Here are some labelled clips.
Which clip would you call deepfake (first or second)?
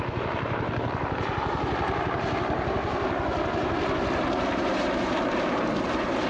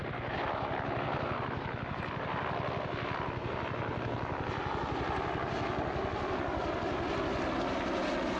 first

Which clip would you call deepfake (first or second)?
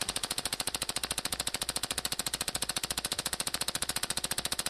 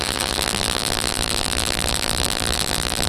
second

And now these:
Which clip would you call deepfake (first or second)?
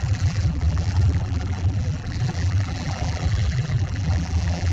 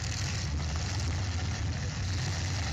first